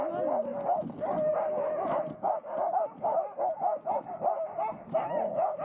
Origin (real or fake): real